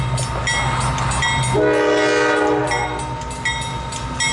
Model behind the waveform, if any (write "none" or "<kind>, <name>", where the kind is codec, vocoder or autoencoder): none